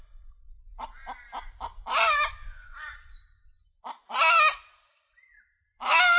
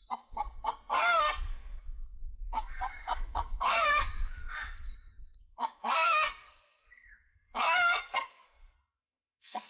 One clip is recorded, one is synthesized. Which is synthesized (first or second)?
second